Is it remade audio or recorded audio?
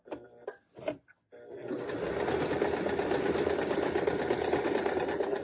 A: recorded